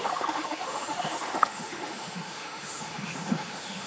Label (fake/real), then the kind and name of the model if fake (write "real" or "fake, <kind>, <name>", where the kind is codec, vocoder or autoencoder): fake, autoencoder, DAC-VAE